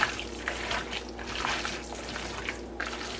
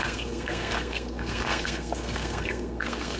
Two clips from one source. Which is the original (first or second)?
first